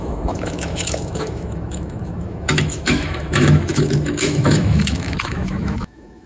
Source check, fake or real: fake